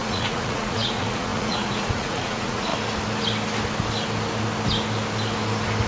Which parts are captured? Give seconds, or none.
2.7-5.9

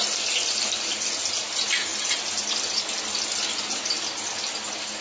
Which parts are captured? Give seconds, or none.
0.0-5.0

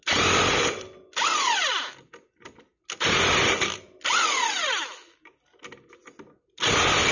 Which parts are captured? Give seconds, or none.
0.0-7.1